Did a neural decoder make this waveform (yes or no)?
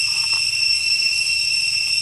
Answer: no